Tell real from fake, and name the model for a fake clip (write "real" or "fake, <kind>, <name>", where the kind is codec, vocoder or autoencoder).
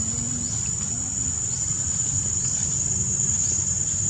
real